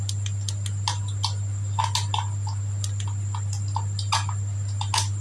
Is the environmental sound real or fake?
real